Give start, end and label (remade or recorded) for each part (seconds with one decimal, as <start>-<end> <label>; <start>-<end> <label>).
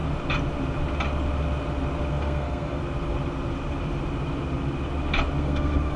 0.0-2.1 recorded; 2.1-2.8 remade; 2.8-5.4 recorded; 5.4-6.0 remade